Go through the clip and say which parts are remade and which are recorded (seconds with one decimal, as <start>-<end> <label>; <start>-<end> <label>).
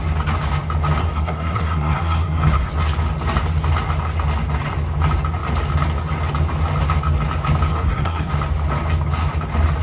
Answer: 0.0-1.0 recorded; 1.0-2.7 remade; 2.7-7.7 recorded; 7.7-8.3 remade; 8.3-9.8 recorded